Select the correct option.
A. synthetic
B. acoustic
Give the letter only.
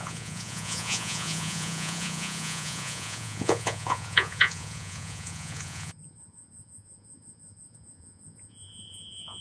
A